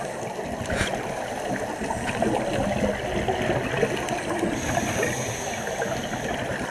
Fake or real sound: real